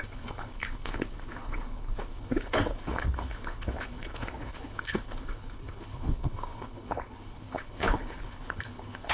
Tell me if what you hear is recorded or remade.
remade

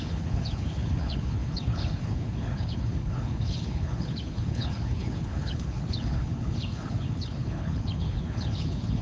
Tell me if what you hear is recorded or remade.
remade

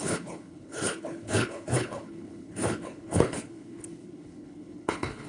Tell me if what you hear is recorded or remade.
remade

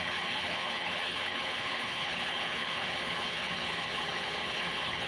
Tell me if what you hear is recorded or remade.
remade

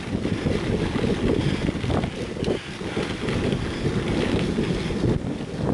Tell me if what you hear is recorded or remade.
recorded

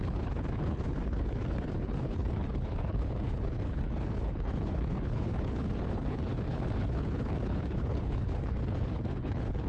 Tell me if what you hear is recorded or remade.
remade